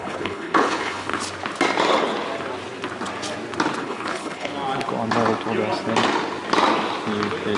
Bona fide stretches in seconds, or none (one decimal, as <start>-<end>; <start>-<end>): 1.1-3.8; 4.5-7.6